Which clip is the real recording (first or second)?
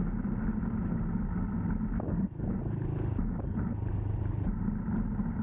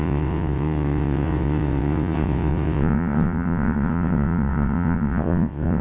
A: first